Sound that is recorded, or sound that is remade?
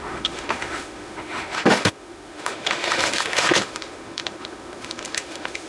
remade